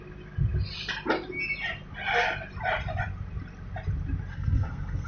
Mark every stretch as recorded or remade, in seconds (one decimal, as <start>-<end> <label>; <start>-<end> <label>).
0.0-4.3 recorded; 4.3-5.1 remade